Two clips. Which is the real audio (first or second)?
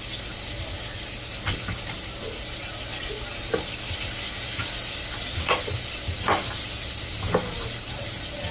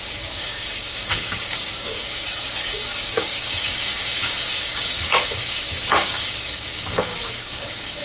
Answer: first